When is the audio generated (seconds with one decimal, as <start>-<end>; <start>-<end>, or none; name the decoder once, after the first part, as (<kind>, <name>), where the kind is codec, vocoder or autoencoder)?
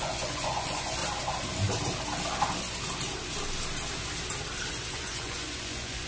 0.0-1.0 (vocoder, Vocos); 4.7-6.1